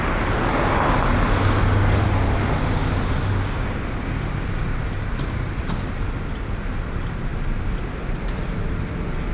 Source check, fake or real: real